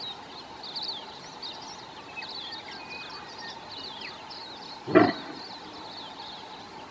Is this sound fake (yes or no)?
no